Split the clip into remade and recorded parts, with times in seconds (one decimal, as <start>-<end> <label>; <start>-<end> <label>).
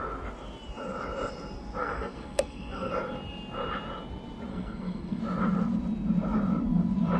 0.0-1.8 recorded; 1.8-2.9 remade; 2.9-4.5 recorded; 4.5-5.2 remade; 5.2-7.2 recorded